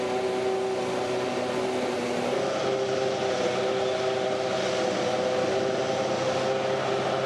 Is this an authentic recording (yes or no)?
yes